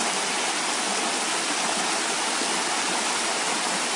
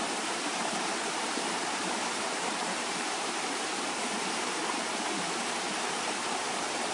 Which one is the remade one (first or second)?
second